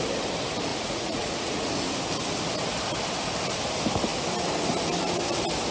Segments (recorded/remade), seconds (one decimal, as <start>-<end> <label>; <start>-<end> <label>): 0.0-0.7 recorded; 0.7-1.7 remade; 1.7-5.7 recorded